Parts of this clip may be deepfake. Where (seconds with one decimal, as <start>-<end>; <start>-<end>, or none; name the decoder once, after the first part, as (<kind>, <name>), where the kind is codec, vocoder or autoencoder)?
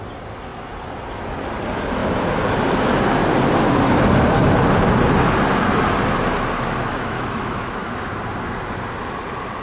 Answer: 6.9-8.2 (autoencoder, DAC-VAE)